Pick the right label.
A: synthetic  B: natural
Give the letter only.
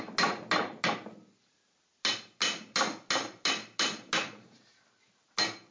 B